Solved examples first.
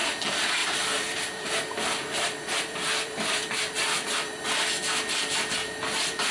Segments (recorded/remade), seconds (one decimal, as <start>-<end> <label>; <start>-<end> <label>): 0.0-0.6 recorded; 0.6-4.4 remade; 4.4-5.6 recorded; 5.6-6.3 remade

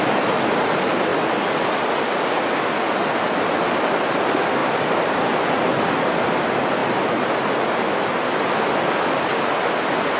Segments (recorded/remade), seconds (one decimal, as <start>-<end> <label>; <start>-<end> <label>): 0.0-4.6 recorded; 4.6-5.2 remade; 5.2-6.8 recorded; 6.8-7.5 remade; 7.5-10.2 recorded

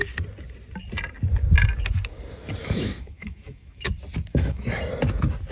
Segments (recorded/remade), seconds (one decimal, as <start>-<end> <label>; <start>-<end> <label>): 0.0-2.6 recorded; 2.6-3.9 remade; 3.9-4.3 recorded; 4.3-4.8 remade; 4.8-5.5 recorded

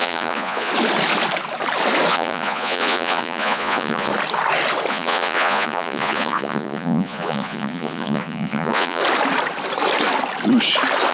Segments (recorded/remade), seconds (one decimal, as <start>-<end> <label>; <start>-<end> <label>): 0.0-0.7 remade; 0.7-2.1 recorded; 2.1-4.1 remade; 4.1-4.9 recorded; 4.9-9.0 remade; 9.0-11.1 recorded